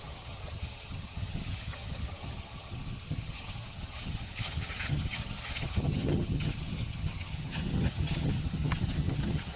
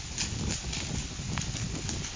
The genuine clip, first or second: second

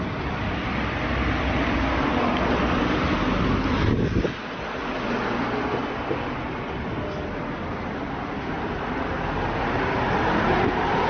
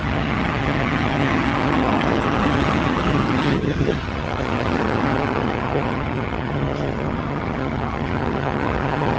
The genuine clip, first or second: first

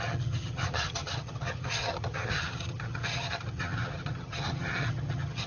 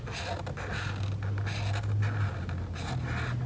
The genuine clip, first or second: second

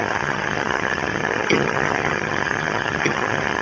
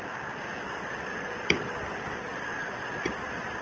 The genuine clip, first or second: second